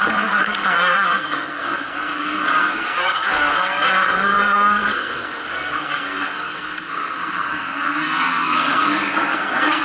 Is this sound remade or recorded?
remade